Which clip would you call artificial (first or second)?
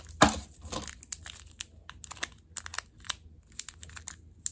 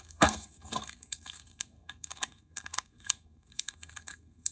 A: second